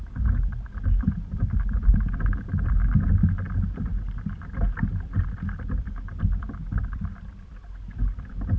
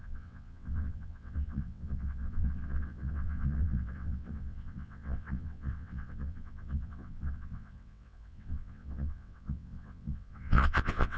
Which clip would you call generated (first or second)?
second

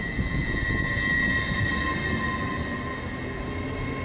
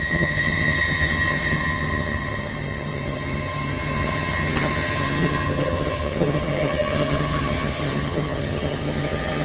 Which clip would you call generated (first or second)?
second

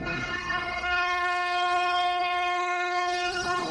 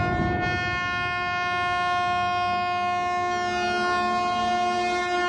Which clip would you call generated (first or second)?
first